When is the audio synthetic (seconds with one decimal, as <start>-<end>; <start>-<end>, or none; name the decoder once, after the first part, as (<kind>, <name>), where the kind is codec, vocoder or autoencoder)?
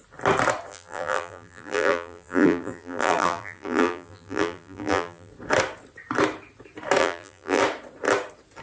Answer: 0.7-5.3 (vocoder, BigVGAN v2); 7.0-7.6